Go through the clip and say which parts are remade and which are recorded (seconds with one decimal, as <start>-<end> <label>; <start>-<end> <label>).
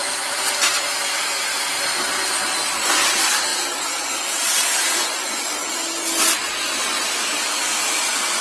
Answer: 0.0-5.2 recorded; 5.2-5.7 remade; 5.7-8.4 recorded